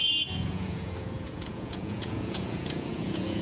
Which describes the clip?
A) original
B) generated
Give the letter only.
B